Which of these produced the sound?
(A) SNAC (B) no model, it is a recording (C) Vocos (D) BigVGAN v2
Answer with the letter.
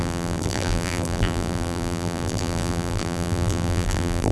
D